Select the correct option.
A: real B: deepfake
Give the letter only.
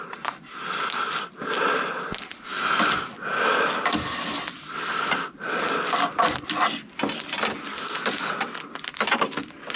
A